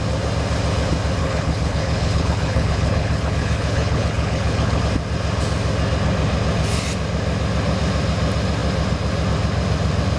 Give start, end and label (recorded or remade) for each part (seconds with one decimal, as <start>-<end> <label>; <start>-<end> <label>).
0.0-1.2 recorded; 1.2-4.8 remade; 4.8-10.2 recorded